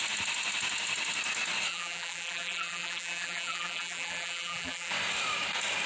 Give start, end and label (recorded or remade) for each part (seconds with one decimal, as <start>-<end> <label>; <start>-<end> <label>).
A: 0.0-1.7 recorded; 1.7-4.9 remade; 4.9-5.9 recorded